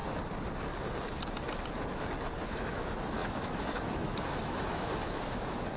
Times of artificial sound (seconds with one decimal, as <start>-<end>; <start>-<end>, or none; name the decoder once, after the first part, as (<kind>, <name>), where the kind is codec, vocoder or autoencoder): 2.4-5.8 (autoencoder, DAC-VAE)